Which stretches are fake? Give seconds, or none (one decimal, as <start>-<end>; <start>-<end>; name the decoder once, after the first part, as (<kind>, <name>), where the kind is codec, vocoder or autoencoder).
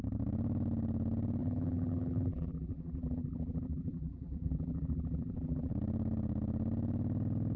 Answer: 1.4-5.7 (vocoder, BigVGAN v2)